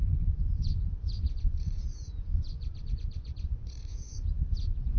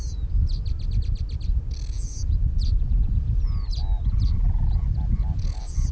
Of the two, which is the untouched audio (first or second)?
second